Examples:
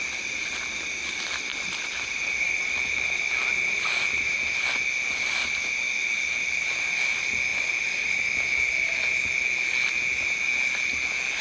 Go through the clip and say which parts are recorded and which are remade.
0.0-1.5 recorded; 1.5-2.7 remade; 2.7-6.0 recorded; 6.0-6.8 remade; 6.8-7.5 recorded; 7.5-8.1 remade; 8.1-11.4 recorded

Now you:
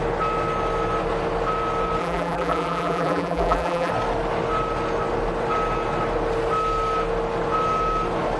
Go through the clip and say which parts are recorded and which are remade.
0.0-2.0 recorded; 2.0-3.9 remade; 3.9-8.4 recorded